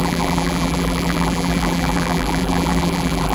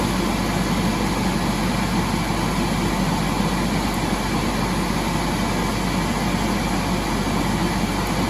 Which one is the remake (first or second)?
first